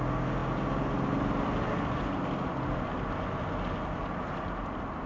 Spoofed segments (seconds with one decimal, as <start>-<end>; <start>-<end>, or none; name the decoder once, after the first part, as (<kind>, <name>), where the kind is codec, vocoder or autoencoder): none